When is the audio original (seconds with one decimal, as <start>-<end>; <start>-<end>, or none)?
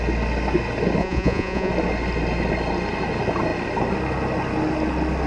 0.0-1.0; 1.7-5.3